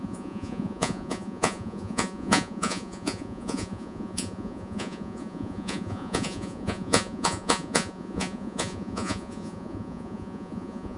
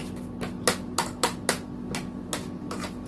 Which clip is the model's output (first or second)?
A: first